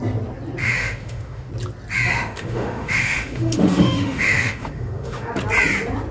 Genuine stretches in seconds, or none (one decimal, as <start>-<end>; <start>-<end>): 0.0-0.6; 1.5-2.1; 5.3-6.1